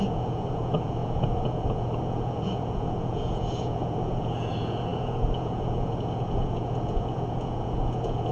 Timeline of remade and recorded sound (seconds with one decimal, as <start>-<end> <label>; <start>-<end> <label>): 0.0-8.3 remade